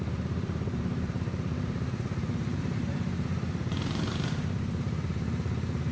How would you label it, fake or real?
fake